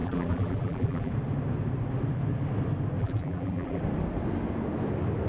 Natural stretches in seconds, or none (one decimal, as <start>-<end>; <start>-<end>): 1.1-3.0; 3.8-5.3